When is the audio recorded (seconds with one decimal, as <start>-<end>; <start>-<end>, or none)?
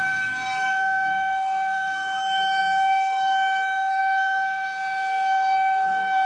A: none